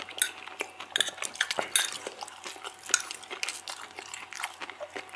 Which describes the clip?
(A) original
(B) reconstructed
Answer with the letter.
A